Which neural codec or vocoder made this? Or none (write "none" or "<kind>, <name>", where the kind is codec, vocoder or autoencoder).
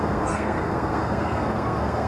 codec, SNAC